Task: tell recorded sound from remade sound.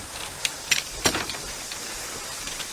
remade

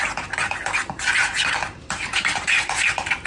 recorded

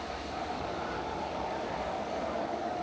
remade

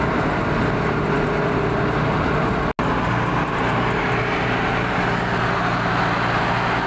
recorded